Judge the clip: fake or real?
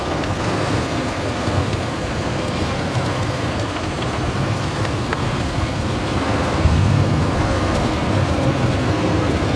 fake